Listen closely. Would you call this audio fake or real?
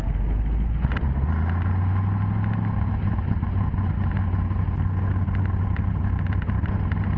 real